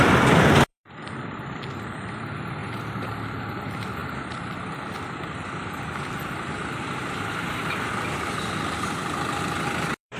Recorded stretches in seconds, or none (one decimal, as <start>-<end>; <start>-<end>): none